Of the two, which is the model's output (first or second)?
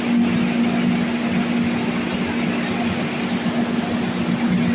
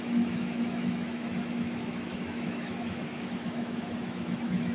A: second